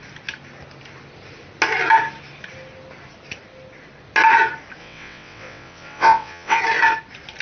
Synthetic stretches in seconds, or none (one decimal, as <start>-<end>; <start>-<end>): 4.8-6.6

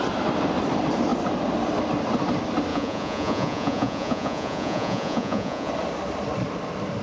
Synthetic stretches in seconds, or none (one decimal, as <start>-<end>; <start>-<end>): 2.7-5.7

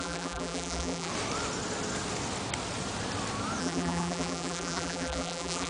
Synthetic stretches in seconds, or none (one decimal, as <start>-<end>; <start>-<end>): 0.0-1.1; 3.6-5.7

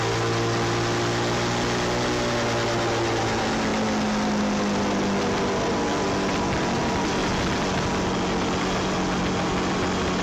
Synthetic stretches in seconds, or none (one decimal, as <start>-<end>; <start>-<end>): none

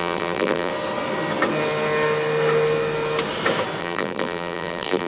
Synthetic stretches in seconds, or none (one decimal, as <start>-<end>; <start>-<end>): 0.0-0.7; 3.8-5.1

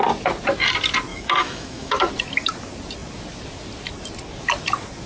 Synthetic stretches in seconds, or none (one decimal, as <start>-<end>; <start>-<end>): 1.1-2.1

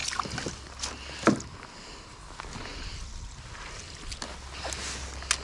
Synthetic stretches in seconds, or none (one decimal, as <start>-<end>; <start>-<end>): none

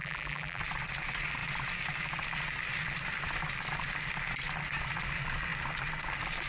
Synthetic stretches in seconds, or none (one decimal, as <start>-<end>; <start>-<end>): 0.0-0.6